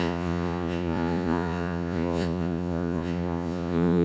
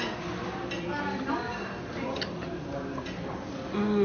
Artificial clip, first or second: first